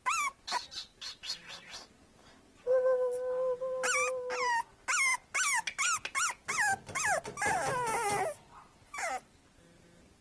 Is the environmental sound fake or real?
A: real